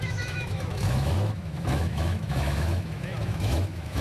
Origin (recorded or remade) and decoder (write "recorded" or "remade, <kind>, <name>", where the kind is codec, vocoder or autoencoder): remade, autoencoder, DAC-VAE